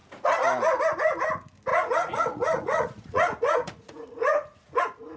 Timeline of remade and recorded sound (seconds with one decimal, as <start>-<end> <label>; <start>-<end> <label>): 0.0-1.7 recorded; 1.7-4.8 remade; 4.8-5.2 recorded